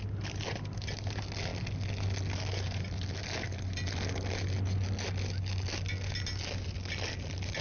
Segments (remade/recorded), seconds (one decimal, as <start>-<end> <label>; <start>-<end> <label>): 0.0-7.6 recorded